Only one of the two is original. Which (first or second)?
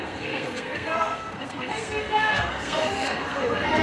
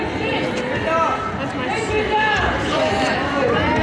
second